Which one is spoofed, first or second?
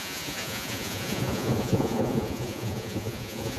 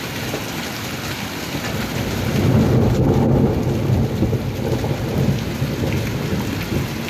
first